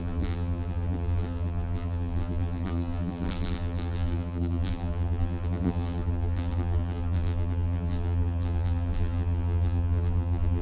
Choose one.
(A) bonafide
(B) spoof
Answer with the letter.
B